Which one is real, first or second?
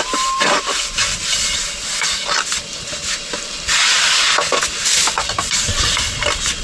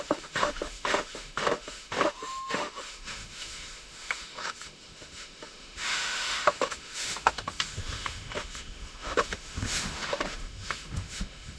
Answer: first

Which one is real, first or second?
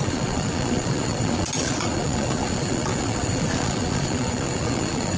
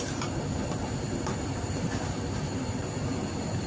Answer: second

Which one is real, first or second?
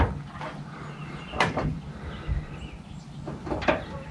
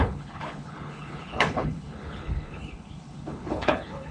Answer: first